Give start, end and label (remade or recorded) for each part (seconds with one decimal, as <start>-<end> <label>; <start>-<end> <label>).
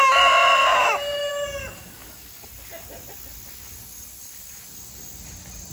0.0-0.4 recorded; 0.4-1.3 remade; 1.3-5.7 recorded